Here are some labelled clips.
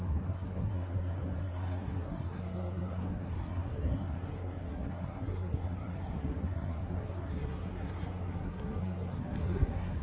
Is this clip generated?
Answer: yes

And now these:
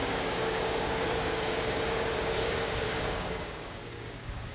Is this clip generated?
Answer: yes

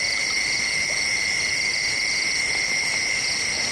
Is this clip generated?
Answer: no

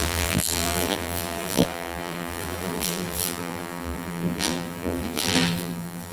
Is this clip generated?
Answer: yes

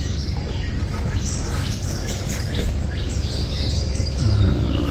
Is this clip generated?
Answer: yes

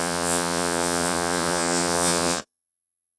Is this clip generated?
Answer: yes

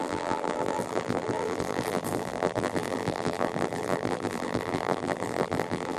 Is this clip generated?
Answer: yes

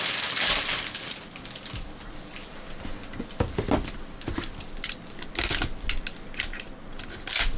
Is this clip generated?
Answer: no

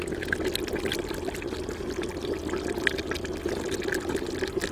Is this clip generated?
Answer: no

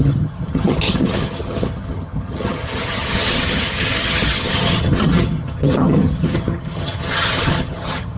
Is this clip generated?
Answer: yes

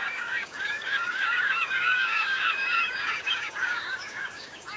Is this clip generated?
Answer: yes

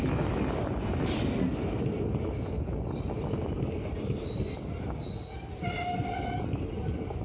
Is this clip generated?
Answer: no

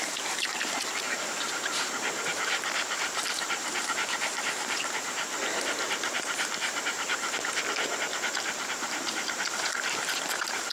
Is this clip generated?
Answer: yes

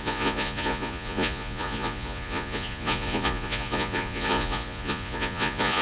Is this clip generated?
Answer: yes